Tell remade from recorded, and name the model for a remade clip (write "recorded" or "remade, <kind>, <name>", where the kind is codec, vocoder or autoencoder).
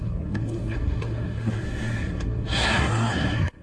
remade, codec, SNAC